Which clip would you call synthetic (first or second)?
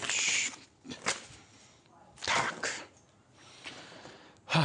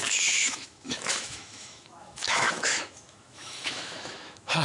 second